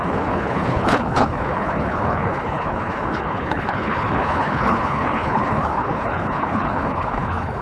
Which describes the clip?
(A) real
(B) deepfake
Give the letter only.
B